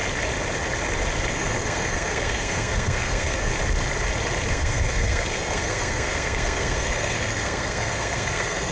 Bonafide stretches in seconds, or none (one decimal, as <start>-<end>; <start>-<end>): 0.0-1.3; 3.5-4.5